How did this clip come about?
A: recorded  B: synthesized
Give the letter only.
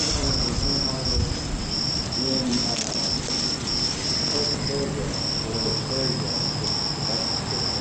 A